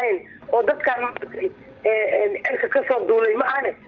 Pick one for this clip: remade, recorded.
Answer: remade